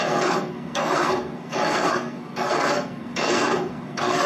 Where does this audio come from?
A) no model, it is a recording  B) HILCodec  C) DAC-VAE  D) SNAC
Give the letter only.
D